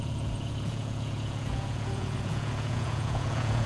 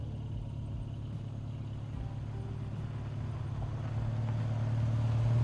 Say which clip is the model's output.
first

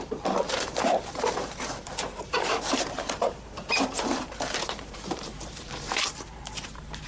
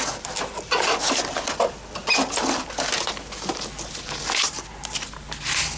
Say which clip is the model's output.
first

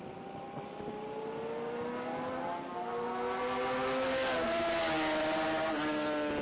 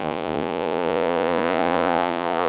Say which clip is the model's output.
second